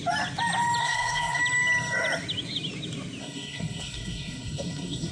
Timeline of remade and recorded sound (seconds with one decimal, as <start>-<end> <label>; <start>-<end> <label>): 0.0-0.8 recorded; 0.8-1.4 remade; 1.4-3.2 recorded; 3.2-5.1 remade